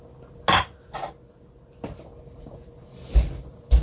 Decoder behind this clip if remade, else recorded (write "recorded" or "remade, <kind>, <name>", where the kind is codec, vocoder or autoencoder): recorded